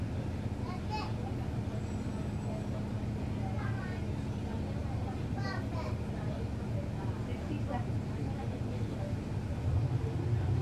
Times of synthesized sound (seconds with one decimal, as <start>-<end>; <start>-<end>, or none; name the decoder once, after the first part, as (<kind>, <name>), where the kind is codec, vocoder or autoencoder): 4.8-5.6 (vocoder, BigVGAN v2); 7.3-7.9